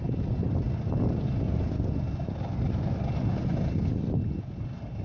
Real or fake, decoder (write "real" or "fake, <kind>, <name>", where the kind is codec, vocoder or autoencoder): real